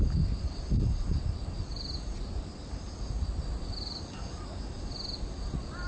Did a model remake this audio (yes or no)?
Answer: no